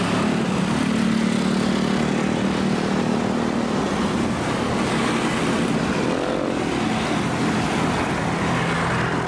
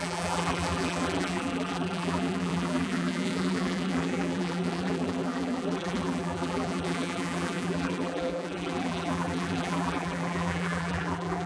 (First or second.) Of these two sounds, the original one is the first